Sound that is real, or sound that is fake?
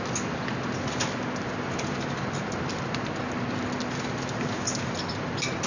real